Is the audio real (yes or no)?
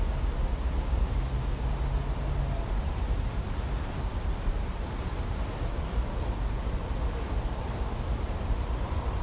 yes